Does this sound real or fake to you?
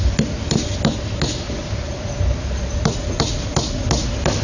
real